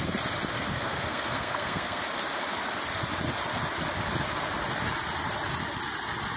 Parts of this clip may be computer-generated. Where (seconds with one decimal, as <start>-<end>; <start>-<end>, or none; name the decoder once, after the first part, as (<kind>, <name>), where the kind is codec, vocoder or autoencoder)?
0.5-2.0 (codec, SNAC)